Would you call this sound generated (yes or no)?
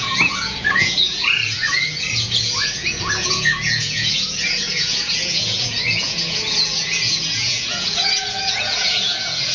yes